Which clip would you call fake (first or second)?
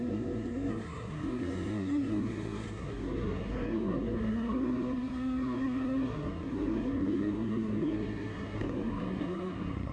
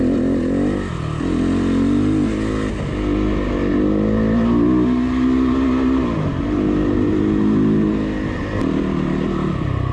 first